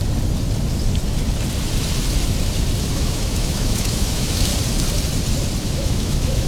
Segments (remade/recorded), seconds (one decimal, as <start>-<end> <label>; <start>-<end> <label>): 0.0-2.8 recorded; 2.8-4.5 remade; 4.5-5.6 recorded; 5.6-6.5 remade